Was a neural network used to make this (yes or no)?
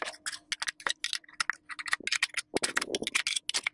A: no